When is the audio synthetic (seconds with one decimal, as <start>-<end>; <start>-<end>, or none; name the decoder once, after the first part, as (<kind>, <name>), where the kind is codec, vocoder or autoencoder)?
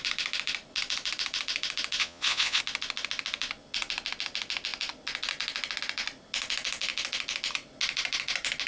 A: 2.0-2.6 (vocoder, Vocos)